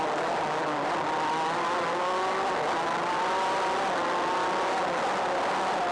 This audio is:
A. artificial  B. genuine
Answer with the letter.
B